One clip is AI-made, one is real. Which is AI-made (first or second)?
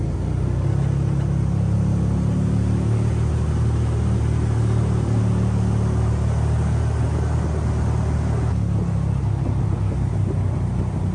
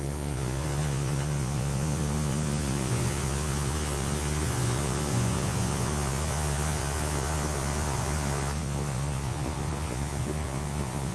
second